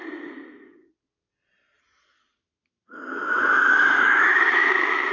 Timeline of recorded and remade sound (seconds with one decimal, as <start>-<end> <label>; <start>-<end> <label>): 0.0-2.4 recorded; 2.4-5.1 remade